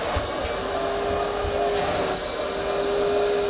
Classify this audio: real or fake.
real